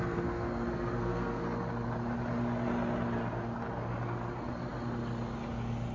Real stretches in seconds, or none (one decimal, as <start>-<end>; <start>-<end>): 1.4-5.9